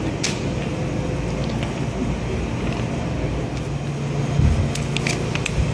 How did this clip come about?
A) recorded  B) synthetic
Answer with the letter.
A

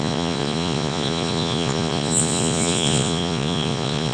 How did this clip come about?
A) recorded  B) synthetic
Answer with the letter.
B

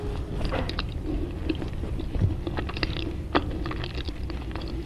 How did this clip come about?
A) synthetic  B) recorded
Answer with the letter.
B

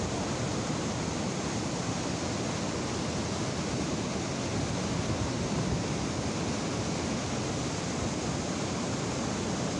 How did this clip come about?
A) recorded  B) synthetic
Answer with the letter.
A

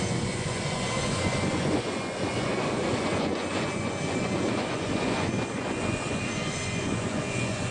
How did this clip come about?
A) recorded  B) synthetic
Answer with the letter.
B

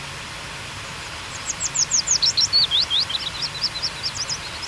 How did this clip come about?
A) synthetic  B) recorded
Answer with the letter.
A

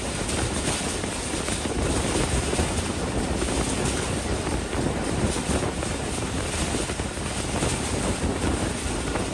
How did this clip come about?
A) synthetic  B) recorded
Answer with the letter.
B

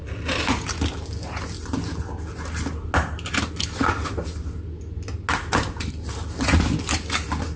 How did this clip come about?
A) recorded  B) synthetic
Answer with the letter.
A